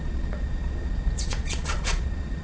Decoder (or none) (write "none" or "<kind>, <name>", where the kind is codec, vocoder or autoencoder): vocoder, Vocos